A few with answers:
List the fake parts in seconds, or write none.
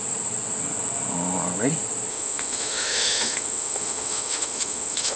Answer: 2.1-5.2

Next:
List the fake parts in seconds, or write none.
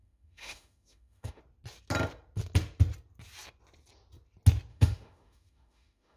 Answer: 0.0-1.4; 4.7-6.2